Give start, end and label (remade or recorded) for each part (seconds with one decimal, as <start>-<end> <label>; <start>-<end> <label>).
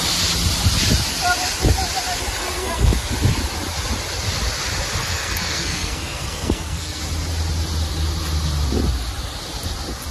0.0-2.4 recorded; 2.4-3.1 remade; 3.1-5.0 recorded; 5.0-7.0 remade; 7.0-10.1 recorded